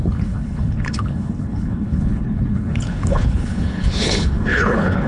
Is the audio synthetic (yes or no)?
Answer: yes